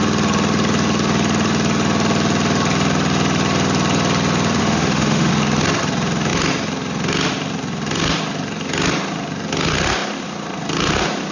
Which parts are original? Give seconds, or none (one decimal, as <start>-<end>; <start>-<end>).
0.0-4.6; 5.3-11.3